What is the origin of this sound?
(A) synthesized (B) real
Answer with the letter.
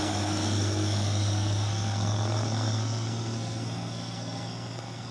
A